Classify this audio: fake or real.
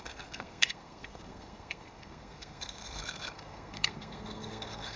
fake